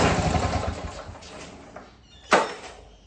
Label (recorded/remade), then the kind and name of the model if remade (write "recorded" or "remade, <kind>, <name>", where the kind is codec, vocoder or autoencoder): recorded